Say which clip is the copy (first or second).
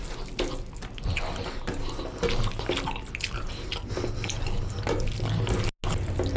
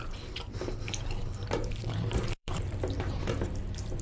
second